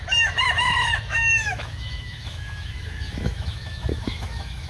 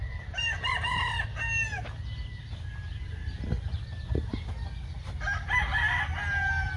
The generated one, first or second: first